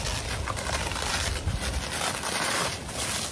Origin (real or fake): real